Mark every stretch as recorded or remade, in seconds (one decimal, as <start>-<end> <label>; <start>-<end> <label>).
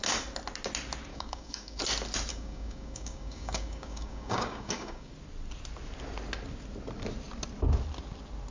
0.0-1.1 recorded; 1.1-1.8 remade; 1.8-2.3 recorded; 2.3-5.1 remade; 5.1-8.5 recorded